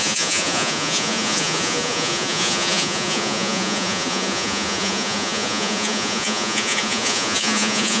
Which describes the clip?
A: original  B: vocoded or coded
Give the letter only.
B